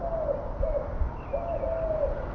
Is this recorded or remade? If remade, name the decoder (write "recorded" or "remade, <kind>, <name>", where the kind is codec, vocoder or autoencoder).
recorded